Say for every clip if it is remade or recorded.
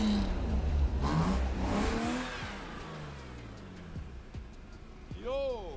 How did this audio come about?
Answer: recorded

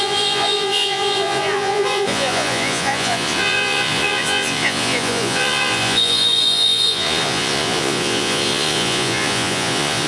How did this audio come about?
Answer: remade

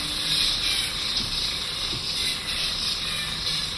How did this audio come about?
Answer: recorded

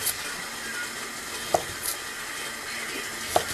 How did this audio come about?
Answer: recorded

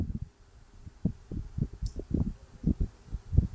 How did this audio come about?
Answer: recorded